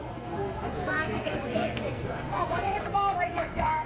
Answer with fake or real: fake